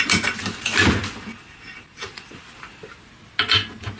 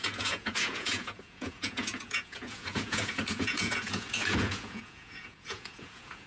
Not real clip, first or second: second